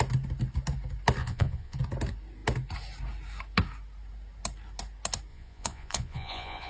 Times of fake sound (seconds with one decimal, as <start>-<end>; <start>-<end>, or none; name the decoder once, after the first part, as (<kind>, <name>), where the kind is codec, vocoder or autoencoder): 1.2-1.8 (vocoder, Vocos); 5.3-6.7